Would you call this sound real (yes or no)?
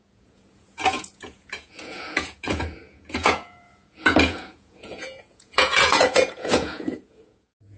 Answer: no